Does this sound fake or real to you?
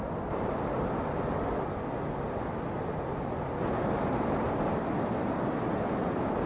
real